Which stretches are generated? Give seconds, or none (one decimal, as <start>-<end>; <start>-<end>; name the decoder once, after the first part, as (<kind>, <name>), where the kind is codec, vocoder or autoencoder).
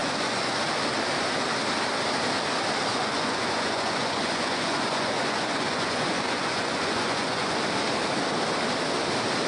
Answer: 0.0-0.6 (vocoder, Vocos); 2.9-7.6